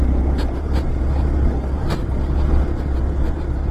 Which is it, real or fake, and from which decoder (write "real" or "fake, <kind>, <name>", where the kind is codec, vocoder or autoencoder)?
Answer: real